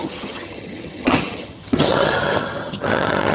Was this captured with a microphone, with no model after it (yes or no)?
no